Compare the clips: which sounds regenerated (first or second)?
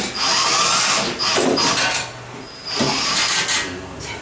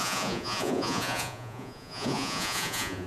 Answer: second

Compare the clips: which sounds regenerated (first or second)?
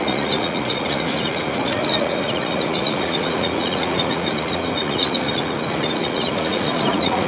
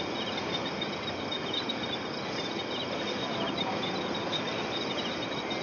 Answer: first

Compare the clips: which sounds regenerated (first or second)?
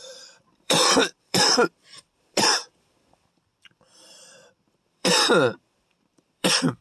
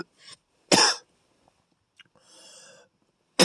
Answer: first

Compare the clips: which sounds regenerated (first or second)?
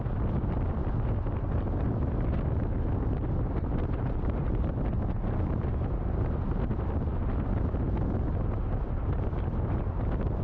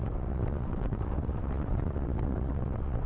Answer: second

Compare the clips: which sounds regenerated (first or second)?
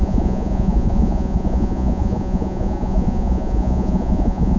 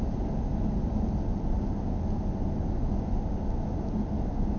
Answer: first